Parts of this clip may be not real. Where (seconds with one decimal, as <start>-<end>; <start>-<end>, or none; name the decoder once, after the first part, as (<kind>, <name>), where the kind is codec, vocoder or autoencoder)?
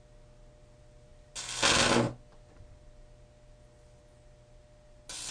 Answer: none